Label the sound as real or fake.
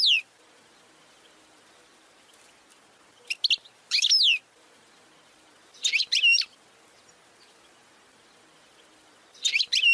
real